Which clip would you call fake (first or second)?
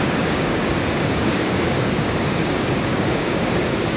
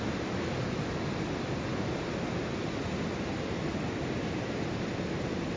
first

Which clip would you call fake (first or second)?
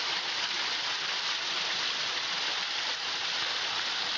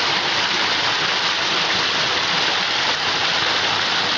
first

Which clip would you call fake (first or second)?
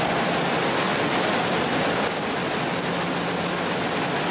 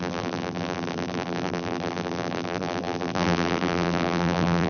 second